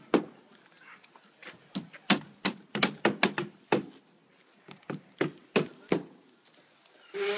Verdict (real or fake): real